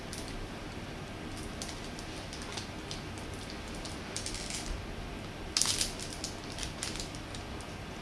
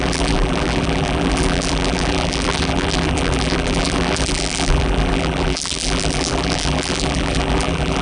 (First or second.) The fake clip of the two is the second